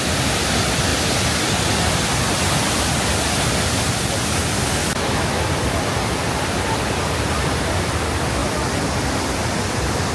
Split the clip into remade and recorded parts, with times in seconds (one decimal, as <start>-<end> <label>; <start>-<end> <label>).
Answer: 0.0-4.8 recorded; 4.8-5.4 remade; 5.4-10.1 recorded